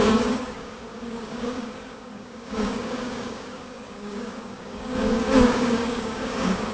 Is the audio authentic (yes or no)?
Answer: no